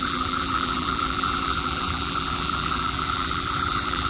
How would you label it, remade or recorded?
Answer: remade